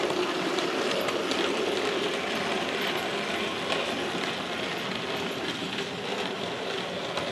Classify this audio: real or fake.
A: real